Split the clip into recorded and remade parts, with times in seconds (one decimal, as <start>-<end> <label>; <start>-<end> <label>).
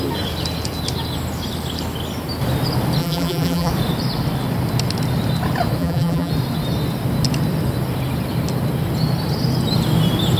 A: 0.0-3.0 recorded; 3.0-3.7 remade; 3.7-5.8 recorded; 5.8-6.3 remade; 6.3-10.4 recorded